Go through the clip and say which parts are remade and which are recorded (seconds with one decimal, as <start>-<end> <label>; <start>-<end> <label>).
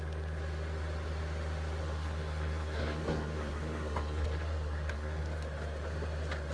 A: 0.0-1.8 recorded; 1.8-5.2 remade; 5.2-6.5 recorded